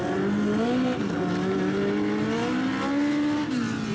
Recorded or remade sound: recorded